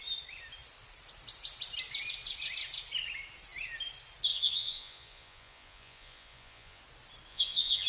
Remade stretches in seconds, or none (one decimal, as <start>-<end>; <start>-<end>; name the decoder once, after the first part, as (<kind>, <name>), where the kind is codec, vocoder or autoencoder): 4.3-6.8 (vocoder, Vocos); 7.3-7.9